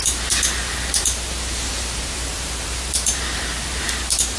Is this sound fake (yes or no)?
yes